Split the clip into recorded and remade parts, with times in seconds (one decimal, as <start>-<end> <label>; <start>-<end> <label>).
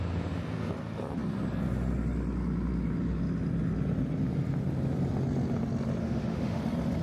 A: 0.0-6.0 recorded; 6.0-6.6 remade; 6.6-7.0 recorded